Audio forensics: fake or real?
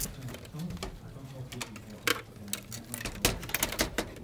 real